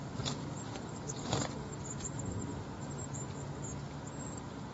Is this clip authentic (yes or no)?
yes